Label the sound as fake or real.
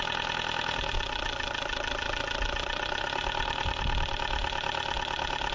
real